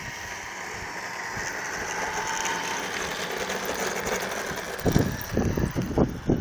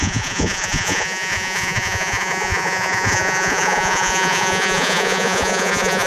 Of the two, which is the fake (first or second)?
second